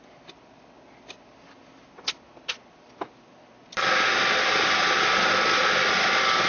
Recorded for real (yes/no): yes